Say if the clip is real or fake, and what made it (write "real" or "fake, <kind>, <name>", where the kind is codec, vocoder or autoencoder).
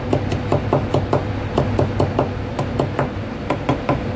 real